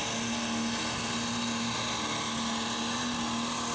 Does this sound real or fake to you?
real